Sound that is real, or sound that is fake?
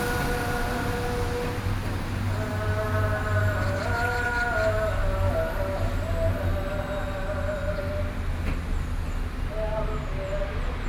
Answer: real